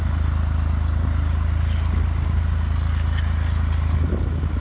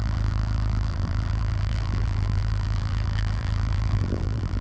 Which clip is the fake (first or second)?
second